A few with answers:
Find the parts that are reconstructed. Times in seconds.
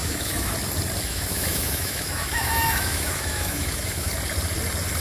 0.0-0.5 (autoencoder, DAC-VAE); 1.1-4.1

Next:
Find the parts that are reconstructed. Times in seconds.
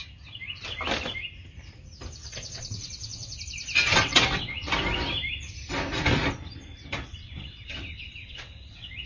2.2-3.4 (vocoder, WaveNeXt); 3.9-4.7; 7.1-9.1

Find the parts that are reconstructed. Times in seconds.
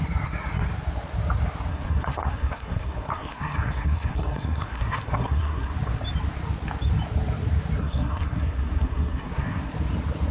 1.7-5.7 (codec, SNAC); 7.8-9.7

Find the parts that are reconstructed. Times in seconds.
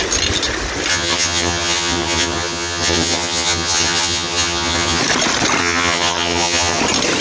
0.9-5.0 (vocoder, HiFi-GAN); 5.6-6.8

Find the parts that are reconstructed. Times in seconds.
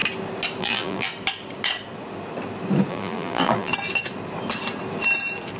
0.6-1.1 (vocoder, BigVGAN v2); 2.9-3.7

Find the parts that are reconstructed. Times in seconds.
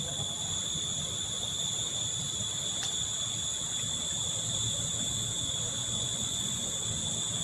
5.8-6.7 (vocoder, Vocos)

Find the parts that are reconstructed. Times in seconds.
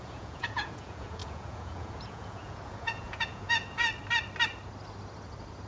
0.0-3.9 (vocoder, Vocos)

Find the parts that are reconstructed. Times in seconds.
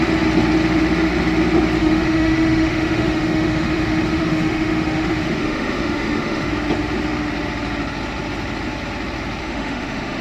1.8-6.5 (autoencoder, DAC-VAE); 9.4-10.2